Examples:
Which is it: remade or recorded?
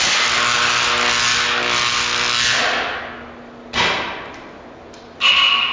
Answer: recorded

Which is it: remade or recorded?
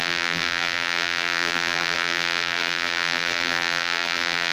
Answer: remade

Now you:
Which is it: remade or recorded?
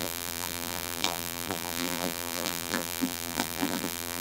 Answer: remade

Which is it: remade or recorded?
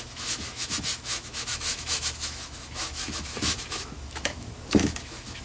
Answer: remade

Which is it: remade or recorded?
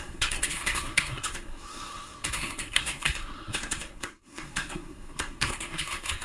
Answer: remade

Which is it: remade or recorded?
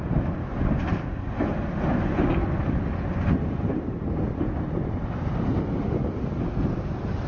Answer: recorded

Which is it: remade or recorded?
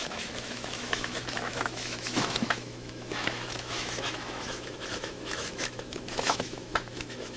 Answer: remade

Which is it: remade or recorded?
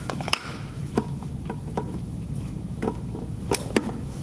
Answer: remade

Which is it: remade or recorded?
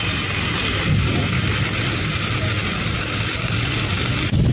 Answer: recorded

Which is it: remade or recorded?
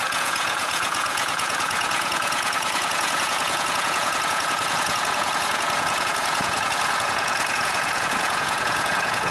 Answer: remade